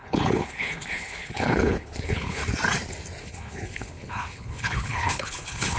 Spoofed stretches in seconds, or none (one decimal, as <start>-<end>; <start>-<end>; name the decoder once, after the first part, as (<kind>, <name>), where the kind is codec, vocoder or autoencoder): 0.0-2.4 (codec, HILCodec); 3.2-5.8

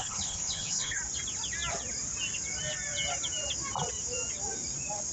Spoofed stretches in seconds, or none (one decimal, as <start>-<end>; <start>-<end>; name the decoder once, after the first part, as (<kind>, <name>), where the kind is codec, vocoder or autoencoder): 0.0-1.0 (codec, HILCodec)